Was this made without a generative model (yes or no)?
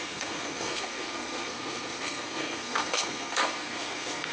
no